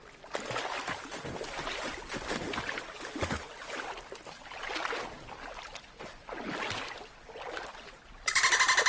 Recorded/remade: recorded